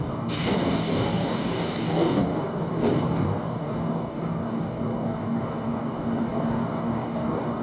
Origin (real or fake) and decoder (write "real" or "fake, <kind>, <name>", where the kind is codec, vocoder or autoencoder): fake, codec, DAC